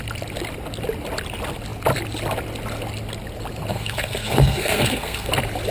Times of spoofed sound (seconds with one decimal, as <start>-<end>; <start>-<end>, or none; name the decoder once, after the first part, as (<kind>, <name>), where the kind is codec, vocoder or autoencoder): 3.7-5.3 (codec, SNAC)